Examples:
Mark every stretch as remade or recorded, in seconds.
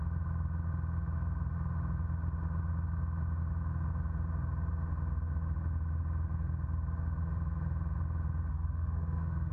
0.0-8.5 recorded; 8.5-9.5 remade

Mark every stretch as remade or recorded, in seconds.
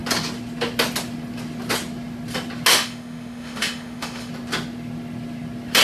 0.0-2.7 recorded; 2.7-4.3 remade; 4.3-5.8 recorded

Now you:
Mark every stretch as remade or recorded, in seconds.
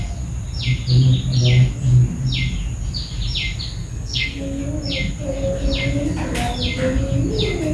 0.0-3.8 recorded; 3.8-4.6 remade; 4.6-7.7 recorded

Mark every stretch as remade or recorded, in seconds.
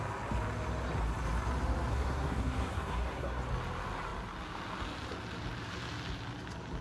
0.0-1.9 recorded; 1.9-3.4 remade; 3.4-6.8 recorded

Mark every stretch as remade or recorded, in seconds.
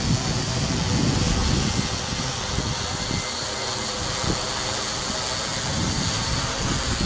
0.0-7.1 recorded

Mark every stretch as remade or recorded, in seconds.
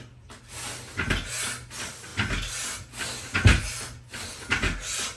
0.0-5.2 recorded